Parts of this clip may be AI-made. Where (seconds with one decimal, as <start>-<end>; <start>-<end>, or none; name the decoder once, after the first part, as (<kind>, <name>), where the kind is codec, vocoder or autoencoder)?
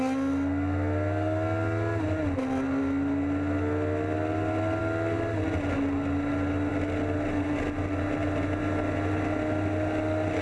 none